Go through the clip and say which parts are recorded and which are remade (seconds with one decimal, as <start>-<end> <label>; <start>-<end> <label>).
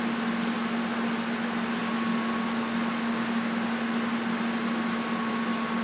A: 0.0-5.8 recorded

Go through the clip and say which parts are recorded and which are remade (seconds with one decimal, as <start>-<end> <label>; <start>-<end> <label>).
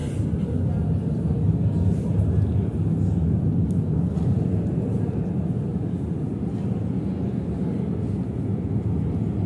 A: 0.0-9.5 recorded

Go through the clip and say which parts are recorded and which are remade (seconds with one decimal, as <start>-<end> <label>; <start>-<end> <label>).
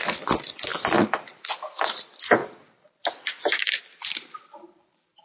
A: 0.0-5.2 recorded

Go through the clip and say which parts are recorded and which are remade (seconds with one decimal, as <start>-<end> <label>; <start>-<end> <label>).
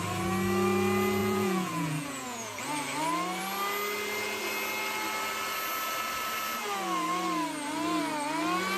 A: 0.0-1.2 recorded; 1.2-2.6 remade; 2.6-8.8 recorded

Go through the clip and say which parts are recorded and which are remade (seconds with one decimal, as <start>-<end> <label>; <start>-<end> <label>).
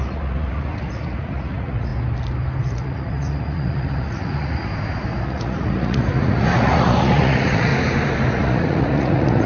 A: 0.0-1.9 remade; 1.9-2.6 recorded; 2.6-4.7 remade; 4.7-5.2 recorded; 5.2-7.7 remade; 7.7-8.3 recorded; 8.3-9.5 remade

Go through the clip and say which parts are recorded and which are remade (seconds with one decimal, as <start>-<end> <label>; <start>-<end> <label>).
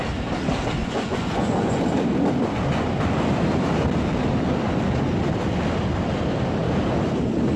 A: 0.0-0.8 recorded; 0.8-1.8 remade; 1.8-7.6 recorded